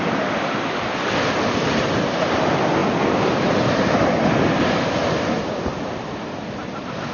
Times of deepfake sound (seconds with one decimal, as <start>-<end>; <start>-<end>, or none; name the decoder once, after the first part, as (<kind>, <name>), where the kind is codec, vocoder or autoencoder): none